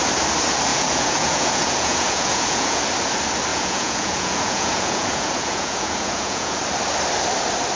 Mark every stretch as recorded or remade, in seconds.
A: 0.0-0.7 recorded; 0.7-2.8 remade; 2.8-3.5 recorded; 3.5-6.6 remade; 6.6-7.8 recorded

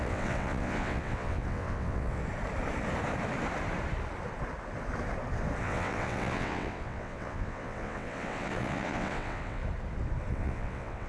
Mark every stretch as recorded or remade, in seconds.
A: 0.0-2.2 remade; 2.2-5.6 recorded; 5.6-9.6 remade; 9.6-10.3 recorded; 10.3-11.1 remade

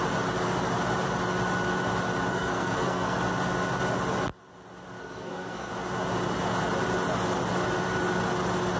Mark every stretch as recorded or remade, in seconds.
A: 0.0-2.3 recorded; 2.3-3.2 remade; 3.2-5.0 recorded; 5.0-5.7 remade; 5.7-8.8 recorded

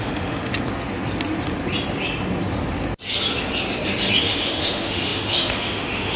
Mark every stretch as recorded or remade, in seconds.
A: 0.0-0.5 remade; 0.5-4.2 recorded; 4.2-6.2 remade

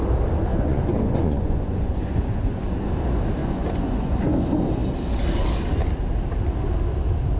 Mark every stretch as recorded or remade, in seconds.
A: 0.0-0.5 recorded; 0.5-2.9 remade; 2.9-3.4 recorded; 3.4-4.2 remade; 4.2-7.4 recorded

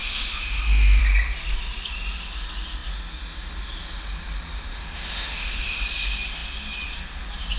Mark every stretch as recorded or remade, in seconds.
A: 0.0-1.0 remade; 1.0-4.7 recorded; 4.7-5.8 remade; 5.8-7.6 recorded

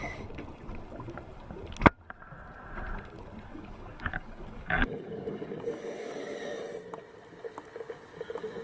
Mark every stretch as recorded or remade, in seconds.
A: 0.0-3.5 recorded; 3.5-6.5 remade; 6.5-8.6 recorded

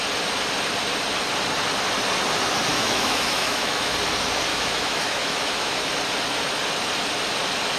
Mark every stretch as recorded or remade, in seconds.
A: 0.0-2.7 recorded; 2.7-3.9 remade; 3.9-4.5 recorded; 4.5-5.9 remade; 5.9-7.8 recorded